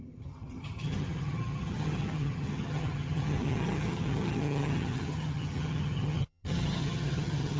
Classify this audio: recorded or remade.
remade